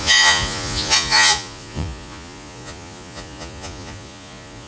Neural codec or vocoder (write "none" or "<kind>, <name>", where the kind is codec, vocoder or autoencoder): vocoder, Vocos